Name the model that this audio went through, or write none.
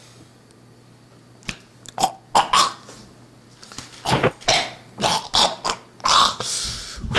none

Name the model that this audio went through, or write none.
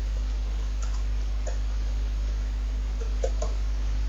codec, DAC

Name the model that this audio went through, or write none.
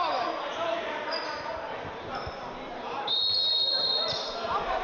none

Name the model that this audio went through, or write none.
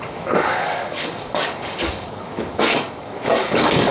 codec, DAC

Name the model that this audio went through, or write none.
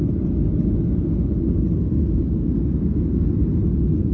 none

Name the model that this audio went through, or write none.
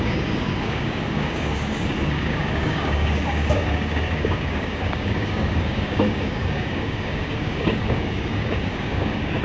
codec, DAC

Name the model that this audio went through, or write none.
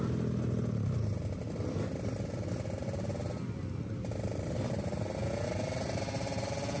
none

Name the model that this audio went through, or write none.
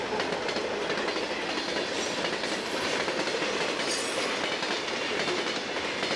none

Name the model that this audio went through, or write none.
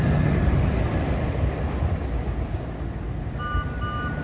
none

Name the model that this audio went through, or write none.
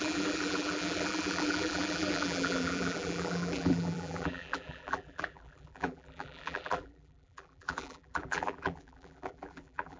vocoder, BigVGAN v2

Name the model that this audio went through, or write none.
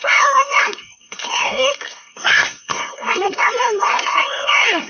codec, SNAC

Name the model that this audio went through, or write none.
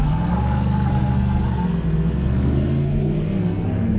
codec, SNAC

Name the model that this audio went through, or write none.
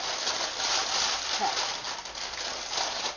none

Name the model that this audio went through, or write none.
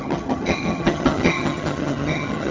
vocoder, HiFi-GAN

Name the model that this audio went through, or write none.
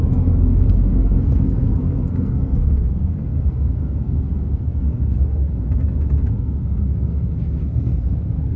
codec, SNAC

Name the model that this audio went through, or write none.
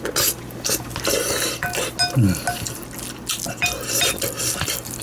none